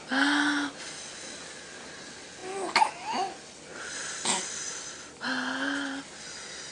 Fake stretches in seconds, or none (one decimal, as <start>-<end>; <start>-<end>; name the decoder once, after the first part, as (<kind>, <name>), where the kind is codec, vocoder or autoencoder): none